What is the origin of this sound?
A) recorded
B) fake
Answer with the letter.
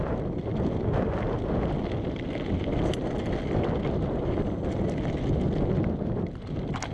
A